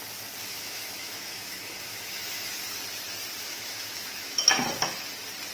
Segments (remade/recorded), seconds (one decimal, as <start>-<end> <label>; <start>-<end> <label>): 0.0-0.4 recorded; 0.4-2.5 remade; 2.5-3.4 recorded; 3.4-4.6 remade; 4.6-5.5 recorded